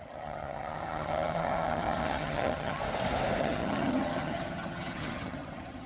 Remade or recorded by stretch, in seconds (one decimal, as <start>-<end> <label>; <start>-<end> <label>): 0.0-2.8 remade; 2.8-3.4 recorded; 3.4-5.9 remade

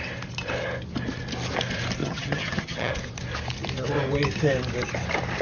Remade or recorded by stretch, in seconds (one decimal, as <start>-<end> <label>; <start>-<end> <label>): 0.0-2.0 recorded; 2.0-2.9 remade; 2.9-5.4 recorded

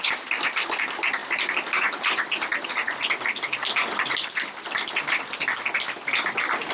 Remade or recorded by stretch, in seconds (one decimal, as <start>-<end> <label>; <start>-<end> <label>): 0.0-6.7 recorded

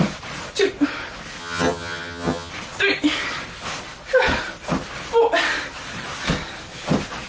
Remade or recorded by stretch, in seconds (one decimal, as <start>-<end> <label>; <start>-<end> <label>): 0.0-1.4 recorded; 1.4-2.5 remade; 2.5-7.3 recorded

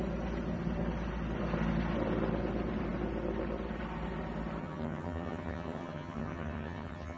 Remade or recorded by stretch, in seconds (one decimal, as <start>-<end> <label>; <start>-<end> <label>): 0.0-4.6 recorded; 4.6-7.2 remade